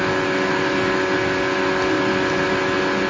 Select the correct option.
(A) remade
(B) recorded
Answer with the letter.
B